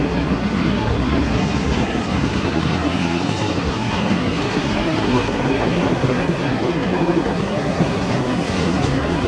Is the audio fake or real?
fake